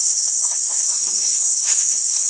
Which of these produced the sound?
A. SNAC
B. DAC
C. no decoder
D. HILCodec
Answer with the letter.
A